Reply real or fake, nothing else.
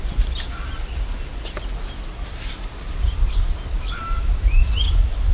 real